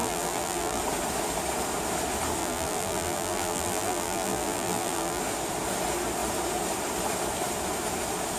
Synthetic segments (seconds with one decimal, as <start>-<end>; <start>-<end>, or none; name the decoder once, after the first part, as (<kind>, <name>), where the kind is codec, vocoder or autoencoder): 0.0-0.8 (vocoder, BigVGAN v2); 2.4-5.2